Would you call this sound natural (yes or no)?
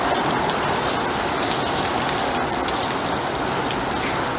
yes